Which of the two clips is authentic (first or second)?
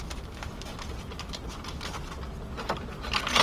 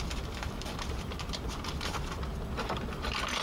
first